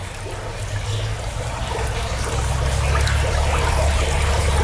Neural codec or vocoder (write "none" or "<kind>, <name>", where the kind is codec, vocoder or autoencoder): none